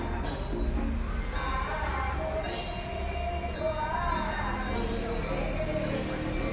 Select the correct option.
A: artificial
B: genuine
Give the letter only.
B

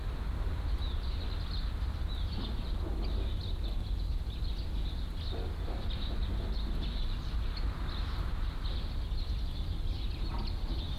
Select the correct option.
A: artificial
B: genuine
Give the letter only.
B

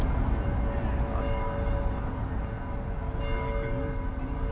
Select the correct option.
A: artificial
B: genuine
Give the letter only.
B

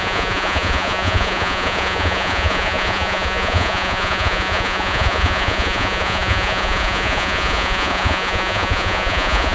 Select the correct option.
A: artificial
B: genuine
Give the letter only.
A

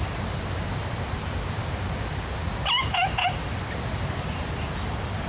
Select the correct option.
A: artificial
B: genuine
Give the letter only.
B